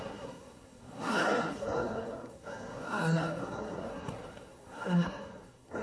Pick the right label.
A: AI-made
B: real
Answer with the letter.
A